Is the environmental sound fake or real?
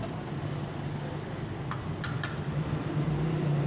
real